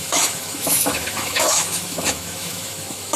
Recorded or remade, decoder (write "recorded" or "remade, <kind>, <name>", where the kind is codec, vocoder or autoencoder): remade, autoencoder, DAC-VAE